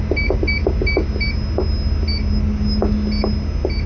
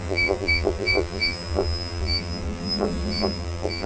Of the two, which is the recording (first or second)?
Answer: first